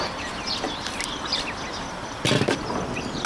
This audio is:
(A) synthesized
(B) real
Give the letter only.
A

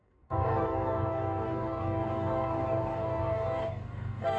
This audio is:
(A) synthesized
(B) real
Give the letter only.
A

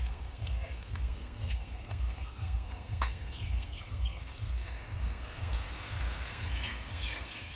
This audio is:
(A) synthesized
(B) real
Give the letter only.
A